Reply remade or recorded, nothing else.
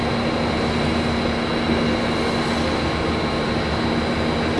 recorded